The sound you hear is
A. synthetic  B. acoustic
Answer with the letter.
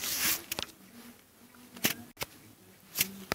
B